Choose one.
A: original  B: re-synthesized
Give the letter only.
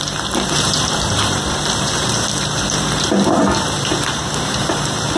B